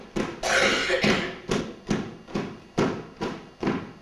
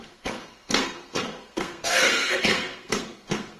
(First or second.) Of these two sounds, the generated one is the second